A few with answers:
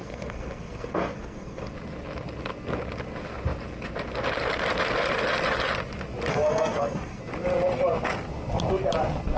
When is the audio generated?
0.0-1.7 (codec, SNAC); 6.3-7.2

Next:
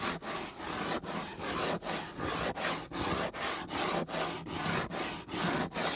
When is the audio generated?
none

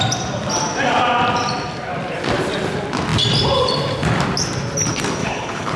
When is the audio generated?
5.2-5.8 (codec, HILCodec)